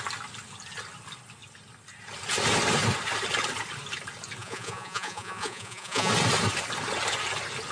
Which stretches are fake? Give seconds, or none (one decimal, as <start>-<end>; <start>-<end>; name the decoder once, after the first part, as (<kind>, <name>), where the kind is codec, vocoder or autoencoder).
4.4-6.1 (vocoder, Vocos)